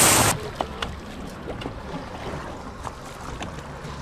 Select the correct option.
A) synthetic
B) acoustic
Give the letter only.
B